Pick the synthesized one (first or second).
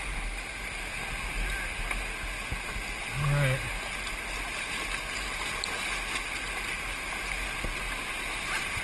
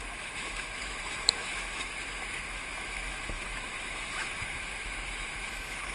second